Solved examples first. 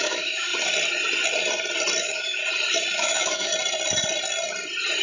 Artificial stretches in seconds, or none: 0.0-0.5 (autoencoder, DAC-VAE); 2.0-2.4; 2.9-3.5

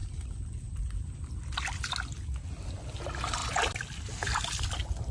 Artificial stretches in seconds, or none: none

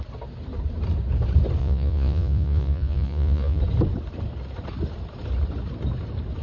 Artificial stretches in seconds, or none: 1.6-3.6 (vocoder, Vocos)

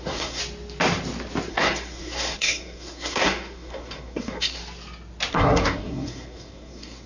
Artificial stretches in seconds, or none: 0.0-0.4 (codec, SNAC); 1.5-4.6; 5.3-7.1

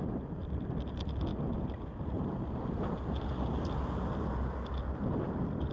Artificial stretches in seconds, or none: 0.0-5.7 (vocoder, BigVGAN v2)

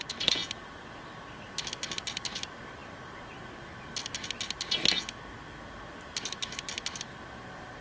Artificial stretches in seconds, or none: none

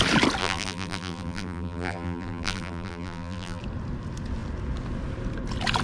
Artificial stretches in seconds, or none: 0.4-3.6 (vocoder, BigVGAN v2)

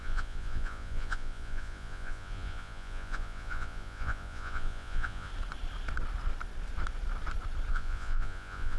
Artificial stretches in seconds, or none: 0.0-5.3 (vocoder, Vocos); 7.7-8.8